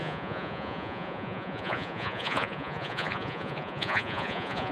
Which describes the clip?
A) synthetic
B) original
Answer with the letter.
A